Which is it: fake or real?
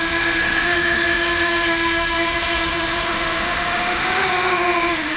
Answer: fake